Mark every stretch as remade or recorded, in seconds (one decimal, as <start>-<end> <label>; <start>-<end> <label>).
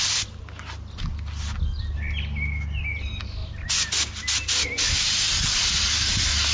0.0-6.5 recorded